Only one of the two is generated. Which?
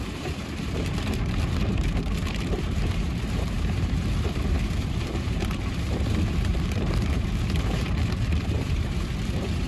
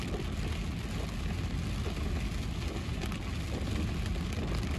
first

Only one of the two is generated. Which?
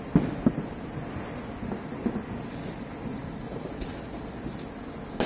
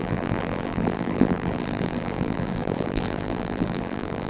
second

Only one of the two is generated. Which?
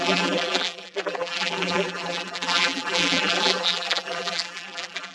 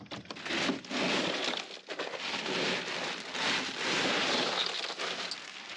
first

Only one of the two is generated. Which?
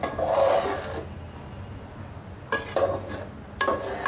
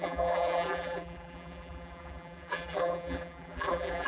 second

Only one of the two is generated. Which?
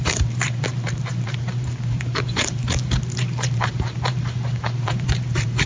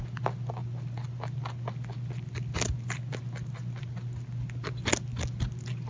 first